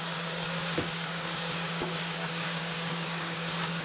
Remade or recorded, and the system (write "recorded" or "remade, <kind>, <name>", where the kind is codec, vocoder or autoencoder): remade, codec, DAC